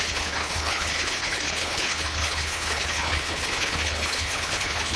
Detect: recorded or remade remade